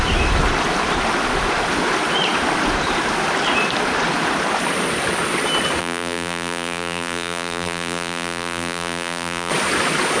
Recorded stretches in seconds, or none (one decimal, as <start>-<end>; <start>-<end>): 0.0-5.8; 9.5-10.2

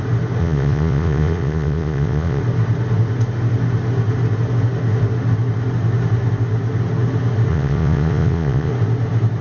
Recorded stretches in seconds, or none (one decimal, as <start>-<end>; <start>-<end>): 0.0-0.4; 2.4-7.5; 8.7-9.4

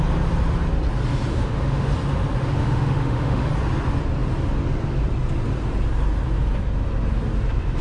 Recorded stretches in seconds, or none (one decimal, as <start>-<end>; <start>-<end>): 0.0-1.3; 1.9-2.4; 3.5-7.8

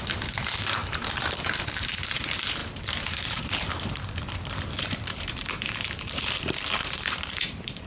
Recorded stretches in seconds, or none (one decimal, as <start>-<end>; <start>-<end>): none

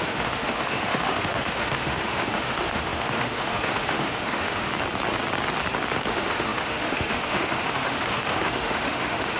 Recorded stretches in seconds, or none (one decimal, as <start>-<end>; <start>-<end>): 4.7-6.1

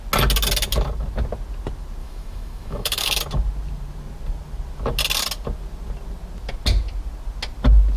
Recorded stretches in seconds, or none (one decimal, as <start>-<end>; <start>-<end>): 0.0-2.0; 3.2-8.0

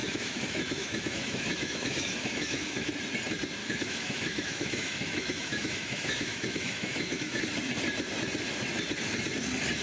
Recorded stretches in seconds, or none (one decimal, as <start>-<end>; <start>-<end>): 2.9-3.6; 7.4-9.8

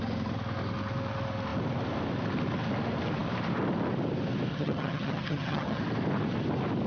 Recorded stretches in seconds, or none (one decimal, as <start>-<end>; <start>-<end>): 0.0-4.5; 5.8-6.9